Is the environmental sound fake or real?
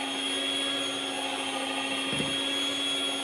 real